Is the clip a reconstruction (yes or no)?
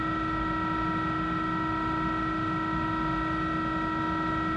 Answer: no